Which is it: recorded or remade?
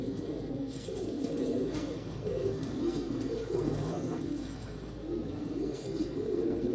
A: remade